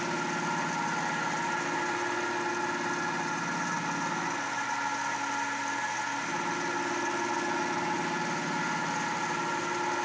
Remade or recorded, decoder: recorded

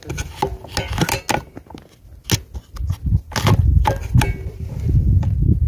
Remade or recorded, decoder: recorded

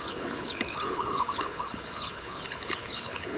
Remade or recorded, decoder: remade, codec, HILCodec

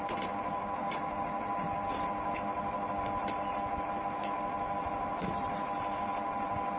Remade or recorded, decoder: recorded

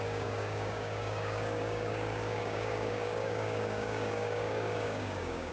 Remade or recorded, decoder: remade, codec, DAC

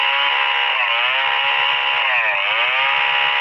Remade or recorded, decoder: recorded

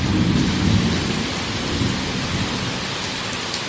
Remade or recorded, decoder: recorded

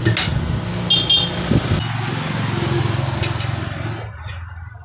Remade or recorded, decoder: recorded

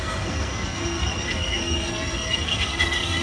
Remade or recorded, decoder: remade, codec, SNAC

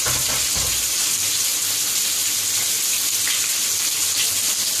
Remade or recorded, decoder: recorded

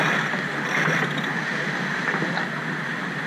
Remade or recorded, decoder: recorded